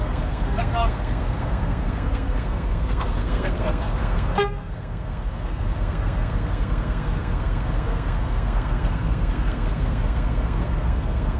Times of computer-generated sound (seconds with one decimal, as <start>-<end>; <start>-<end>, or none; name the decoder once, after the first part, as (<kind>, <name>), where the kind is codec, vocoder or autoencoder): 0.0-11.4 (codec, SNAC)